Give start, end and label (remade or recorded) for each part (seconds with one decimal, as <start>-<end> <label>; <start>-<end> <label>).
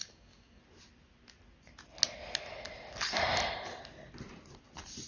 0.0-0.6 remade; 0.6-5.1 recorded